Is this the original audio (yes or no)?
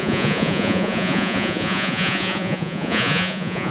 no